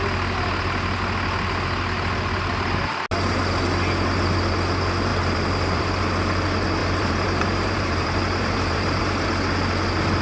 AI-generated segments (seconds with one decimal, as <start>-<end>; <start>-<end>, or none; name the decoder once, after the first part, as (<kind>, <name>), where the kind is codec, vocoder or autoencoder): 5.1-6.0 (vocoder, BigVGAN v2); 6.8-9.0